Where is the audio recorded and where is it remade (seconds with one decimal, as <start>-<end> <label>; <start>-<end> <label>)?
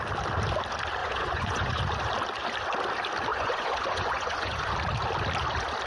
0.0-1.0 recorded; 1.0-1.8 remade; 1.8-3.3 recorded; 3.3-4.7 remade; 4.7-5.9 recorded